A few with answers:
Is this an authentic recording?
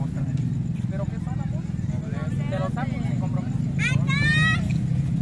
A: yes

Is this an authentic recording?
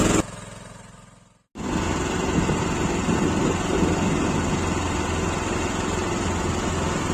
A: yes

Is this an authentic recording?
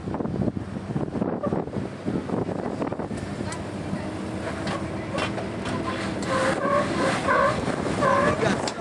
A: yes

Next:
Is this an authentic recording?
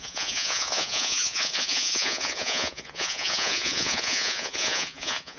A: no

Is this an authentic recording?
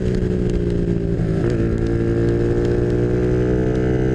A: yes